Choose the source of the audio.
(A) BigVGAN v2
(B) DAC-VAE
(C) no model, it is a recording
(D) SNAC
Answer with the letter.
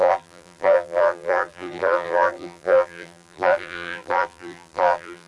A